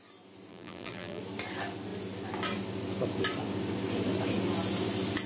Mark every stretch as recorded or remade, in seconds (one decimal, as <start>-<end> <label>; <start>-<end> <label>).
0.0-0.5 recorded; 0.5-1.2 remade; 1.2-5.3 recorded